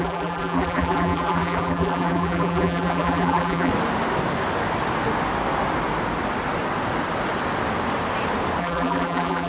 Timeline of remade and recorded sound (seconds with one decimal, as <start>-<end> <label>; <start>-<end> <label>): 0.0-3.7 remade; 3.7-8.6 recorded; 8.6-9.5 remade